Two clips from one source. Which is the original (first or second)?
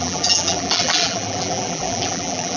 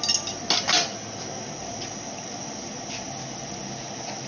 second